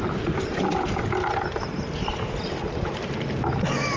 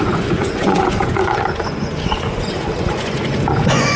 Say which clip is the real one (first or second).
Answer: first